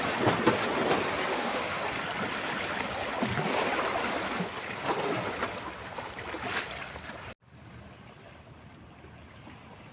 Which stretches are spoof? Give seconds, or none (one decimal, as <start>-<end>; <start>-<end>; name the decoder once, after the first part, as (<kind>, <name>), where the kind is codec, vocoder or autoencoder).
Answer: 1.3-1.8 (autoencoder, DAC-VAE)